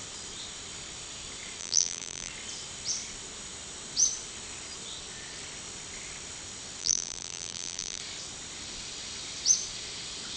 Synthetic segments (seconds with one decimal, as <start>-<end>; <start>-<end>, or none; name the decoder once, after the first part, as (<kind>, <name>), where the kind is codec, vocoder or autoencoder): 1.6-2.3 (vocoder, BigVGAN v2); 6.8-8.0